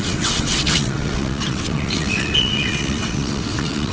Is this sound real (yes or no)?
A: no